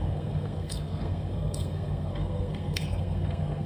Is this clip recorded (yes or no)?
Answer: no